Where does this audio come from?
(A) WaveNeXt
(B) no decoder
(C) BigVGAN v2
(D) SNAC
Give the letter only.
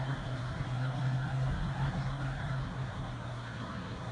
D